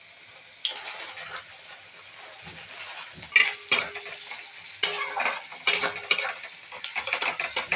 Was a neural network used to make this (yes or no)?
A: no